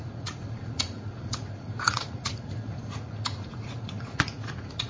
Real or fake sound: fake